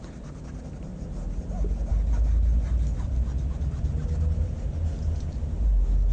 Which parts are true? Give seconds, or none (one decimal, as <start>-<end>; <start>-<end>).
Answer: 0.0-6.1